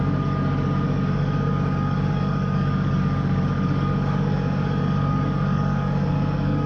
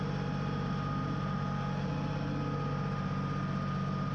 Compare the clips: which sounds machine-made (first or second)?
first